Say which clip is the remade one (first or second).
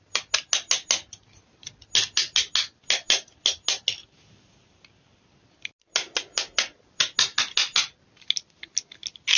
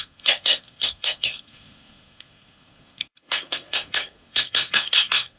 second